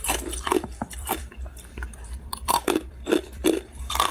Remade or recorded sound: remade